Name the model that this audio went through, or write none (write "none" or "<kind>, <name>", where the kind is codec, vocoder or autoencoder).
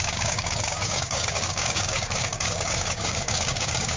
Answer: codec, DAC